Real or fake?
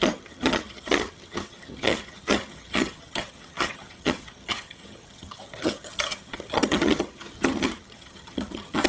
fake